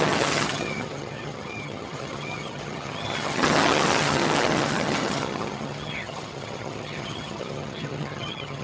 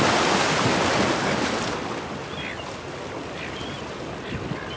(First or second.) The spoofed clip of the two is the first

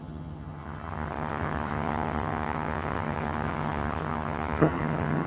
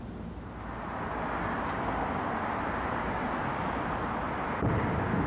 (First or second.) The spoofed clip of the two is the first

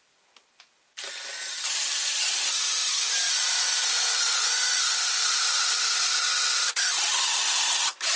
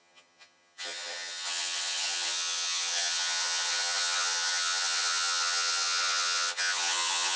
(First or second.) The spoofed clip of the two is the second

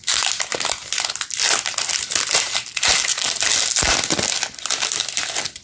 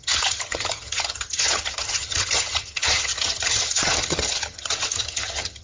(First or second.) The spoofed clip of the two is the second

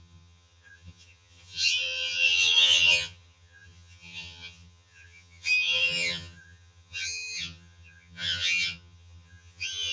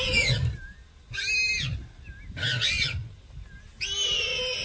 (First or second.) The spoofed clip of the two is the first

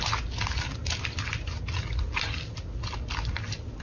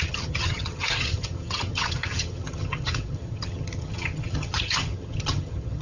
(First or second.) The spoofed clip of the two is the second